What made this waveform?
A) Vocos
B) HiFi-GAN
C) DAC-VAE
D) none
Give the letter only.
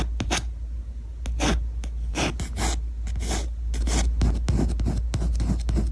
D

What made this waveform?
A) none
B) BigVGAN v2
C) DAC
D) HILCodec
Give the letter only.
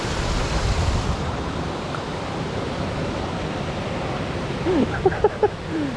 B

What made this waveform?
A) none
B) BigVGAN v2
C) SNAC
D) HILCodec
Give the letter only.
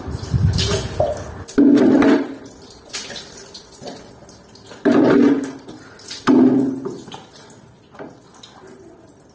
A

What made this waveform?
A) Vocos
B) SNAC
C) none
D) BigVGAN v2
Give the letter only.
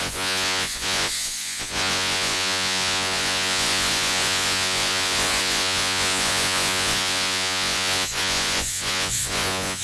A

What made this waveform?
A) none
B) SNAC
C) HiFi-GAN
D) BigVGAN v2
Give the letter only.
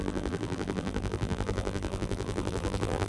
D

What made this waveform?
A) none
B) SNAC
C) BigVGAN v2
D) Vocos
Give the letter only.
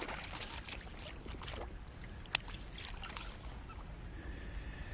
A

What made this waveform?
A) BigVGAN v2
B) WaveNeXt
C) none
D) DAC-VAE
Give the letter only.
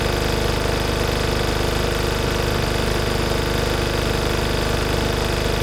C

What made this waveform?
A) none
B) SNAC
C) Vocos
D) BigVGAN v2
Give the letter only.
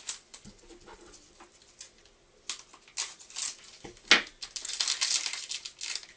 A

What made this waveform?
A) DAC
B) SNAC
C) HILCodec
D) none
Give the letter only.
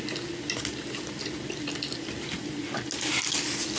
D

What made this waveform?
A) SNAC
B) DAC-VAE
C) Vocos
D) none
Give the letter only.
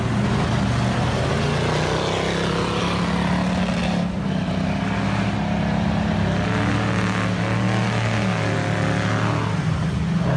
D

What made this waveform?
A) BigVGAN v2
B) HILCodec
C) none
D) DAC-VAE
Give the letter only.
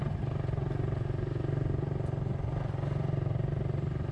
C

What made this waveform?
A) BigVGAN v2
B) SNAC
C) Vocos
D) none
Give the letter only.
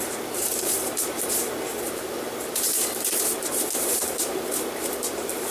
A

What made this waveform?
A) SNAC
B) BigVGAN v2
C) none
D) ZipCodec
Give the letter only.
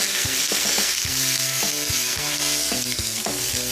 A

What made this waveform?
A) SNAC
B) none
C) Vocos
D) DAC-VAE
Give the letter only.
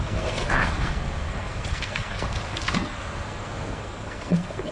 A